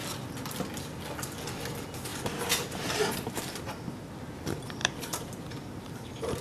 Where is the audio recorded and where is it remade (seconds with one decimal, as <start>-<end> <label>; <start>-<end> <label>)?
0.0-2.1 recorded; 2.1-4.1 remade; 4.1-4.8 recorded; 4.8-6.4 remade